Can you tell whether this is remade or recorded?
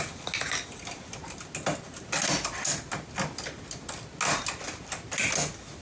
recorded